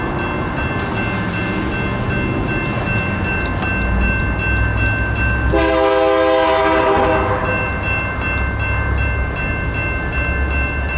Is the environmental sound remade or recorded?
recorded